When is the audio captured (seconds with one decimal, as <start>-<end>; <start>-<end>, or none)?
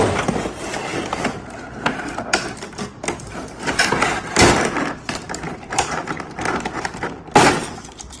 0.9-4.9; 6.0-8.2